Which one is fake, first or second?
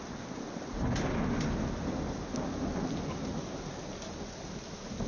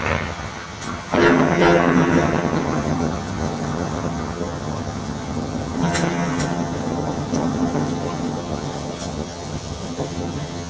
second